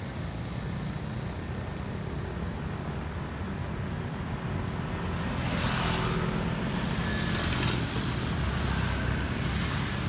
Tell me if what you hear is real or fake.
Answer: real